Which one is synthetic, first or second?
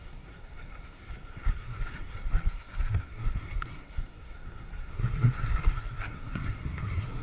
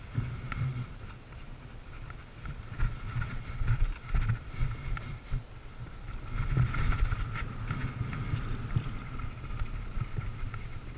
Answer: first